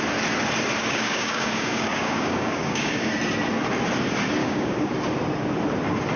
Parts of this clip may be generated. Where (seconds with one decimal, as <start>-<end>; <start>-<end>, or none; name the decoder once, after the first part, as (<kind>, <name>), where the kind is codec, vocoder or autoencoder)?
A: 0.8-3.1 (codec, DAC); 4.4-4.9